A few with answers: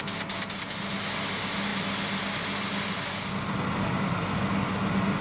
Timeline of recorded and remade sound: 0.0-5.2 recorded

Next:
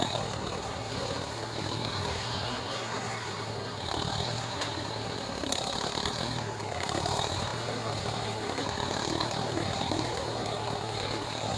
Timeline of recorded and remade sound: 0.0-11.6 remade

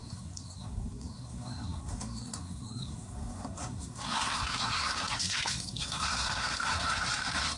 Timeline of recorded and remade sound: 0.0-7.6 remade

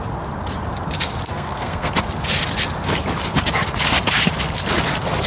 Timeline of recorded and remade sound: 0.0-1.3 recorded; 1.3-1.9 remade; 1.9-5.3 recorded

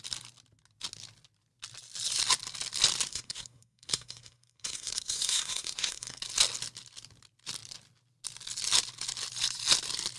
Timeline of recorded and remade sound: 0.0-3.1 recorded; 3.1-6.2 remade; 6.2-10.2 recorded